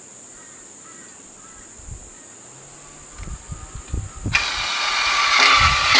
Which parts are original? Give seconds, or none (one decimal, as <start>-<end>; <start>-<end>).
0.0-6.0